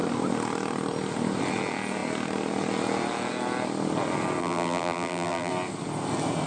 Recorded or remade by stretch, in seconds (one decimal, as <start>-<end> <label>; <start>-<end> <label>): 0.0-4.4 recorded; 4.4-5.5 remade; 5.5-6.5 recorded